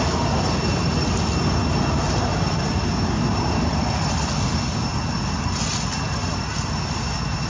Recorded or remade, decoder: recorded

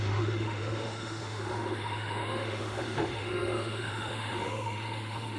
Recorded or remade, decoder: remade, autoencoder, DAC-VAE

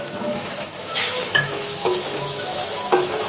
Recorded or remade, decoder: remade, autoencoder, DAC-VAE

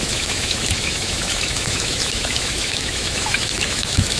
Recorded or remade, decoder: remade, autoencoder, DAC-VAE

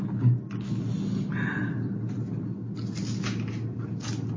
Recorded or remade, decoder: recorded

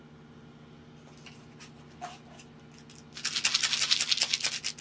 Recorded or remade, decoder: recorded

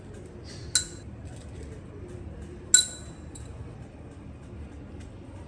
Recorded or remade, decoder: recorded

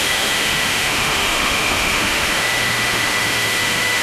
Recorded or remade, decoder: remade, autoencoder, DAC-VAE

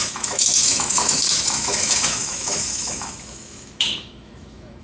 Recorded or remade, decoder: remade, autoencoder, DAC-VAE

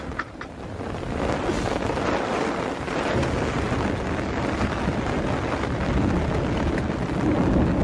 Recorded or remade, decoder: recorded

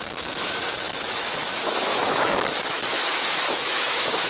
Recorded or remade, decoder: remade, autoencoder, DAC-VAE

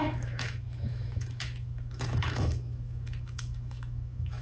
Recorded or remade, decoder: remade, autoencoder, DAC-VAE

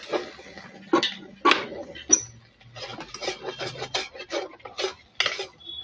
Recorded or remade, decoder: recorded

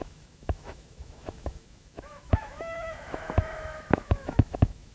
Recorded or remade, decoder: remade, autoencoder, DAC-VAE